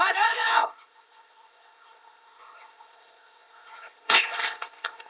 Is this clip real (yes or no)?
no